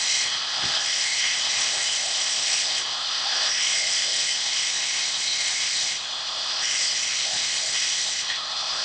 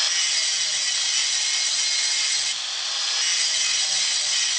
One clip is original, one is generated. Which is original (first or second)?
second